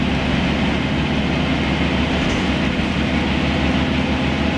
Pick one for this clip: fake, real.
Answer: real